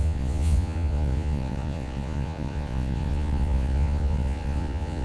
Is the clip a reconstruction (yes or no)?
yes